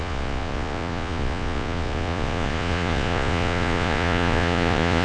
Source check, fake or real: fake